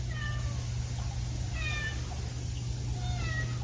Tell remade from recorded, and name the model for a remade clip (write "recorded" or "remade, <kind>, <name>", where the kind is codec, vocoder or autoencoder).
recorded